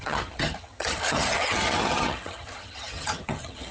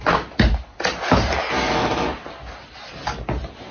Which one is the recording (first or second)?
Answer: second